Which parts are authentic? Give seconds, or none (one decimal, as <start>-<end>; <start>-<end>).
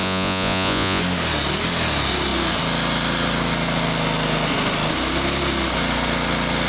1.0-6.7